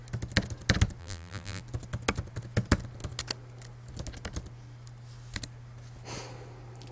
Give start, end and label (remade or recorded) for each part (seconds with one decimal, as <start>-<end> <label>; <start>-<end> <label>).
0.0-1.0 recorded; 1.0-1.6 remade; 1.6-6.9 recorded